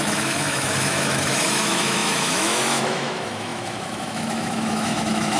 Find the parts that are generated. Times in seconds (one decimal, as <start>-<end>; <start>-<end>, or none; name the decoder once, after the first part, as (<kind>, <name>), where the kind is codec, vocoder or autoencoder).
0.0-5.4 (autoencoder, DAC-VAE)